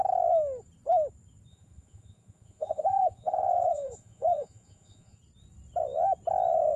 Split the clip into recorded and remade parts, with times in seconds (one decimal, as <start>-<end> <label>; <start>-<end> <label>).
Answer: 0.0-1.5 recorded; 1.5-5.2 remade; 5.2-6.8 recorded